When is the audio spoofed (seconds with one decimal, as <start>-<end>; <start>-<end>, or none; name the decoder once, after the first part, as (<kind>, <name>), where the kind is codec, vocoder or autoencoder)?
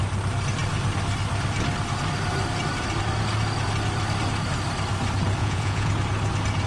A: 5.4-5.9 (vocoder, Vocos)